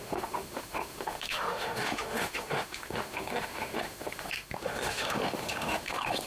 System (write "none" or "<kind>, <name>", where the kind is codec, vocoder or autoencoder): autoencoder, DAC-VAE